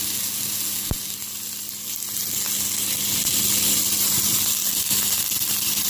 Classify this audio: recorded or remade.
recorded